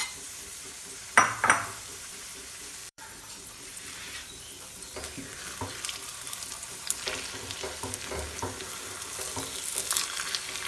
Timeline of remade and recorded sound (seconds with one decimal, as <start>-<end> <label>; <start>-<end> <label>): 0.0-4.5 remade; 4.5-6.1 recorded; 6.1-6.9 remade; 6.9-10.7 recorded

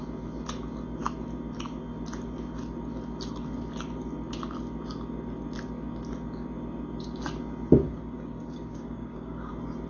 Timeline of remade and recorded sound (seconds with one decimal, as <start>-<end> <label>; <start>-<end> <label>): 0.0-7.8 recorded; 7.8-9.5 remade; 9.5-9.9 recorded